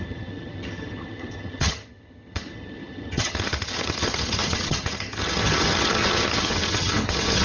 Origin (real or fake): fake